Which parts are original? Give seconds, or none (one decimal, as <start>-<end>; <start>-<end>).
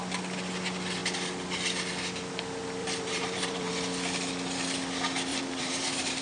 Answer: 0.0-2.8; 3.7-5.3